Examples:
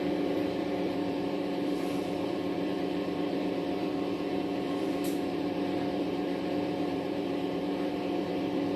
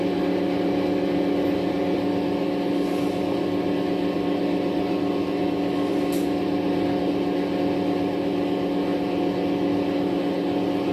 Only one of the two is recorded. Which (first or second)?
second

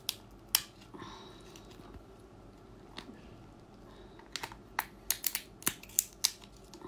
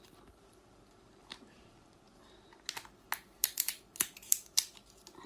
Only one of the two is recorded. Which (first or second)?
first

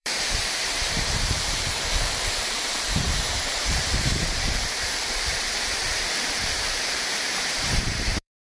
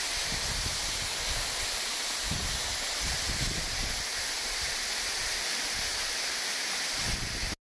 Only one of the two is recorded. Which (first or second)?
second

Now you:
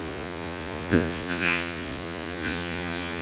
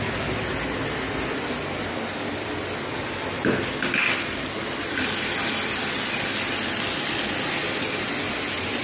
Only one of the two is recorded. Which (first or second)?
second